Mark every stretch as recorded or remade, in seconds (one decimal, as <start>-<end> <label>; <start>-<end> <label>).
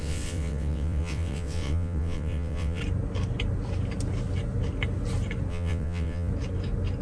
0.0-2.8 remade; 2.8-5.5 recorded; 5.5-6.3 remade; 6.3-7.0 recorded